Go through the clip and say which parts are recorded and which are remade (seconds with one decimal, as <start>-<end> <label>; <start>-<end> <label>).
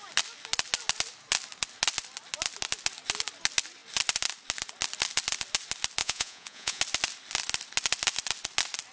0.0-6.0 recorded; 6.0-6.8 remade; 6.8-8.9 recorded